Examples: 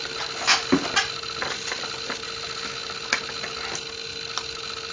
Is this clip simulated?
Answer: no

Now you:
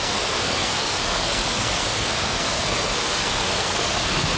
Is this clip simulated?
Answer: yes